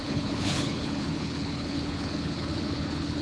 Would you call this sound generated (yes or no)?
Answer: yes